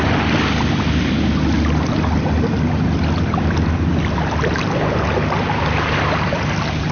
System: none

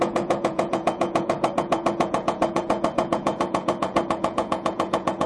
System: vocoder, Vocos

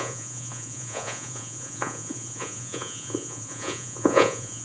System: vocoder, Vocos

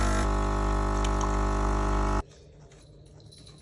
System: none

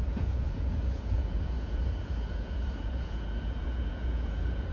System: vocoder, Vocos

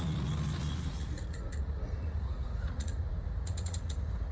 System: vocoder, Vocos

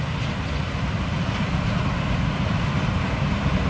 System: none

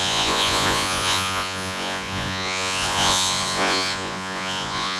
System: vocoder, Vocos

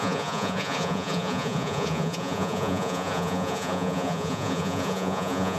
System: vocoder, Vocos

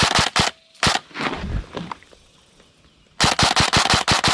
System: none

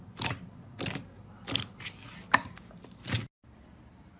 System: none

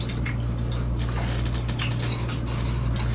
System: none